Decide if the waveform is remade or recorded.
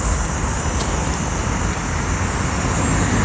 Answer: recorded